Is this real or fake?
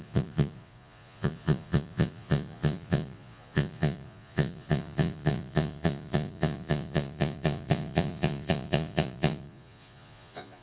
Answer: fake